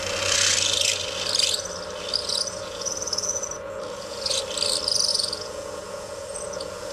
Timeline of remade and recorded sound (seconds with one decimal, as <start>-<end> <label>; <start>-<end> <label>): 0.0-2.2 recorded; 2.2-4.4 remade; 4.4-5.1 recorded; 5.1-6.9 remade